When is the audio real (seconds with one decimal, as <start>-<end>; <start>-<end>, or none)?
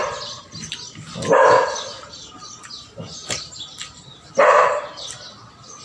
0.0-5.8